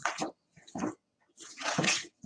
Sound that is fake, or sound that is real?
fake